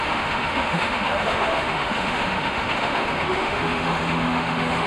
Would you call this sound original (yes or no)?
no